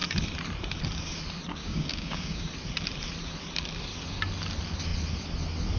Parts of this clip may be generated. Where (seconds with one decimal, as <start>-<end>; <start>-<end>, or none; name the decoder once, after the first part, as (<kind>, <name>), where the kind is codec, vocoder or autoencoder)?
1.6-2.5 (codec, DAC)